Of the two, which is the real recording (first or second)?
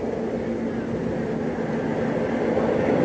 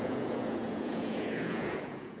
first